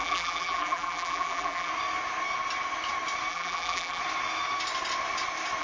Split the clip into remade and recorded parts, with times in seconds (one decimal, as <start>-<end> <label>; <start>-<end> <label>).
0.0-1.7 remade; 1.7-3.3 recorded; 3.3-4.0 remade; 4.0-5.6 recorded

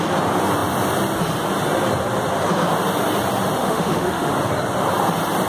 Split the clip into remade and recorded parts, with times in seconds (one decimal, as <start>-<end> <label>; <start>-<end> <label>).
0.0-3.6 recorded; 3.6-4.3 remade; 4.3-5.5 recorded

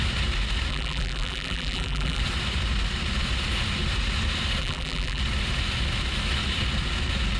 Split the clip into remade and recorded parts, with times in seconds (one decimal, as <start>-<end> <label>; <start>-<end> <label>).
0.0-0.7 recorded; 0.7-2.2 remade; 2.2-4.6 recorded; 4.6-5.2 remade; 5.2-7.4 recorded

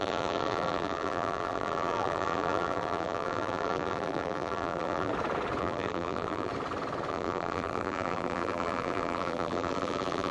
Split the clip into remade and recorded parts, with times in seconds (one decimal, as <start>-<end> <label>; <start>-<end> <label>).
0.0-5.1 remade; 5.1-5.6 recorded; 5.6-6.5 remade; 6.5-7.1 recorded; 7.1-10.3 remade